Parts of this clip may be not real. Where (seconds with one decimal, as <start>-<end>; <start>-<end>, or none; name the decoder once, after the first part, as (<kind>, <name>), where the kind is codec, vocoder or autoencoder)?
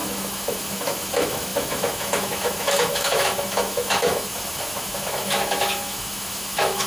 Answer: 0.0-6.9 (autoencoder, DAC-VAE)